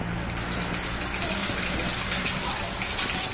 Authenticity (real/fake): real